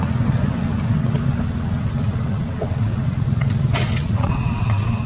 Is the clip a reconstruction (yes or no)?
yes